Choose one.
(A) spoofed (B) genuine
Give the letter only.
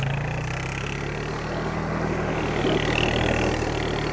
B